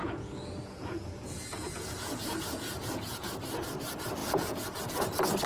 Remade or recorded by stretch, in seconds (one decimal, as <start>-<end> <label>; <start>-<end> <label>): 0.0-3.3 remade; 3.3-4.2 recorded; 4.2-5.0 remade; 5.0-5.5 recorded